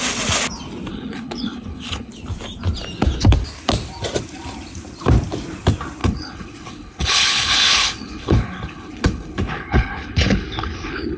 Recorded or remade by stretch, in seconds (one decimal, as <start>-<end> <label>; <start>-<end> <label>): 0.0-0.9 recorded; 0.9-2.1 remade; 2.1-6.0 recorded; 6.0-11.2 remade